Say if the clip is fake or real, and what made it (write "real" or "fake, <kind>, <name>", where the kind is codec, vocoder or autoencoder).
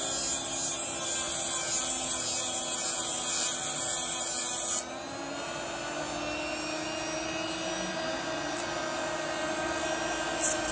real